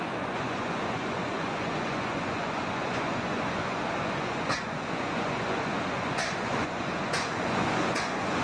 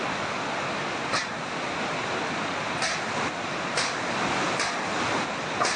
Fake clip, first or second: first